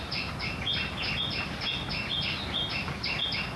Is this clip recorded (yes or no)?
yes